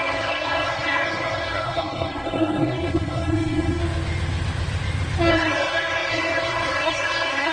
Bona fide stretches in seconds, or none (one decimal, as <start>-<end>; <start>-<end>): 3.8-5.3